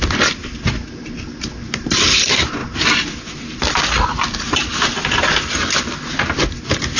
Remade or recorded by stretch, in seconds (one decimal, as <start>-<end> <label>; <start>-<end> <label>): 0.0-7.0 recorded

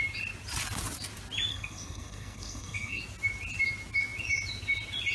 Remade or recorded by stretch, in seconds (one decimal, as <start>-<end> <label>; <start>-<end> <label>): 0.0-1.5 recorded; 1.5-3.0 remade; 3.0-5.1 recorded

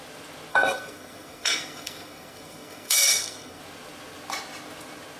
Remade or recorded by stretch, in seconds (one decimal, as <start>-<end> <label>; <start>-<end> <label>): 0.0-0.5 recorded; 0.5-3.6 remade; 3.6-5.2 recorded

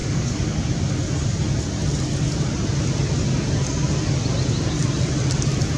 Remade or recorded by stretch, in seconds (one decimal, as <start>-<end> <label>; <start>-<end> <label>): 0.0-0.6 remade; 0.6-5.8 recorded

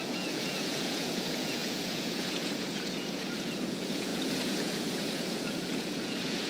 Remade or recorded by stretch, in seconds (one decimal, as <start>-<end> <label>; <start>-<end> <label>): 0.0-6.5 remade

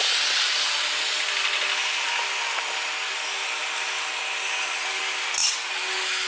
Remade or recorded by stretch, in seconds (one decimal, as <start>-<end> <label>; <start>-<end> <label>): 0.0-6.3 recorded